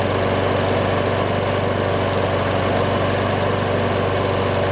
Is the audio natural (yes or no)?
yes